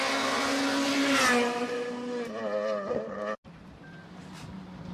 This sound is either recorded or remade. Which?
recorded